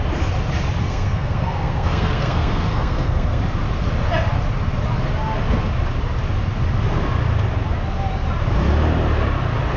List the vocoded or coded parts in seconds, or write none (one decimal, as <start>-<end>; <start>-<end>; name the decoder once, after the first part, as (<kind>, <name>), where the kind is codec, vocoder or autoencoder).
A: 0.8-3.4 (codec, SNAC)